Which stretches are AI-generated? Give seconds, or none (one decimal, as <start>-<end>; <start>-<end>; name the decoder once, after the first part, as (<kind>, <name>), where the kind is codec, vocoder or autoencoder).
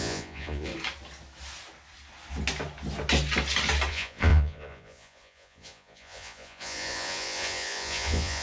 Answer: 0.0-0.7 (vocoder, Vocos); 3.9-8.4